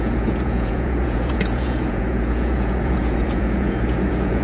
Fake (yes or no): yes